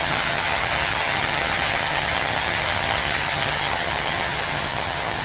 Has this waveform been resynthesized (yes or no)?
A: yes